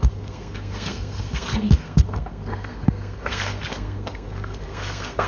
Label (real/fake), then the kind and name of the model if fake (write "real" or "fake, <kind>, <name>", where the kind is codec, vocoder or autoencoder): fake, codec, SNAC